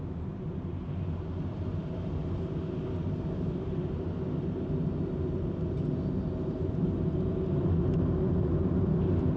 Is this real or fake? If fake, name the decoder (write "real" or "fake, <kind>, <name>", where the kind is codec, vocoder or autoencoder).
real